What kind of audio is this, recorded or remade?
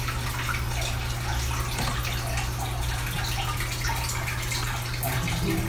recorded